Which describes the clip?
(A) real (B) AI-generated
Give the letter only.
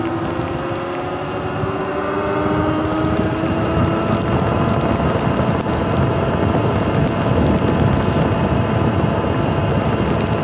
A